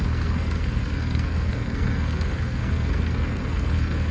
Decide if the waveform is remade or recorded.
remade